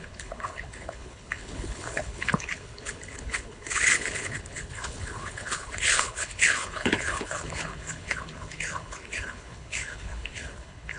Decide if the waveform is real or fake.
fake